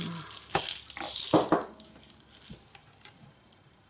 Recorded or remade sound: recorded